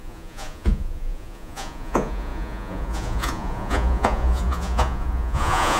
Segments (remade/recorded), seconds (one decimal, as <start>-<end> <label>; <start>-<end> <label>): 0.0-5.8 remade